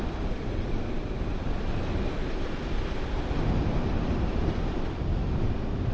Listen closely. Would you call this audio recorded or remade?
recorded